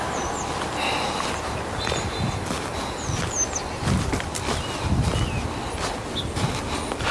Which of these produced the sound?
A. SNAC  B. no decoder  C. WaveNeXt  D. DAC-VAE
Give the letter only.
B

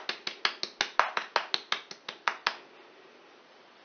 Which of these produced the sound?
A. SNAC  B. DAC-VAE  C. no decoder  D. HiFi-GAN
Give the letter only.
C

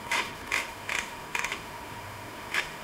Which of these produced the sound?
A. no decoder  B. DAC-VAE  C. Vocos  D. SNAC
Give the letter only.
B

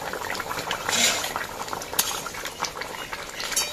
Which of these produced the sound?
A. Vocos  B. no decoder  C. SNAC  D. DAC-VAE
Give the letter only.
B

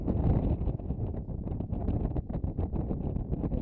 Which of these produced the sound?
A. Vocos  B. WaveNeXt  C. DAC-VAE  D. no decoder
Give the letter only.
D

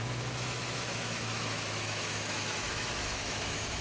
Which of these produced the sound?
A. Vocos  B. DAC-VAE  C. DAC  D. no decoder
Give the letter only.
B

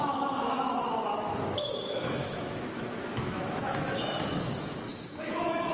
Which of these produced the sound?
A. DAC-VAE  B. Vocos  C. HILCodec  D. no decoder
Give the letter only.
A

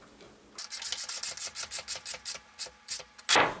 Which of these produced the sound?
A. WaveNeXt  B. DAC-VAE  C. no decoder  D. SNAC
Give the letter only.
C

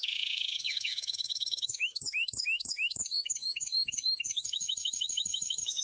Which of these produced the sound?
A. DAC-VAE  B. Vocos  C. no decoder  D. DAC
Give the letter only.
A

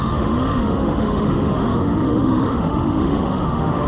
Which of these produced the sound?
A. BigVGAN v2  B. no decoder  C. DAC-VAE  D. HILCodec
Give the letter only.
C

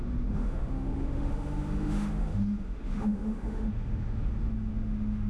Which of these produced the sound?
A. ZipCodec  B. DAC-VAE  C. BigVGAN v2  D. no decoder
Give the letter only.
B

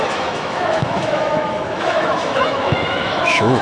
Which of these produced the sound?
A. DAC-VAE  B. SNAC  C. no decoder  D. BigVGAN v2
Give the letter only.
A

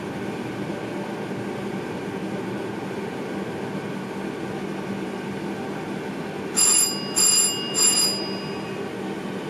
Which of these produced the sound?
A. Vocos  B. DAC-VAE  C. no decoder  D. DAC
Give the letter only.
C